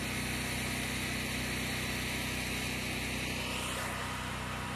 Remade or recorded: recorded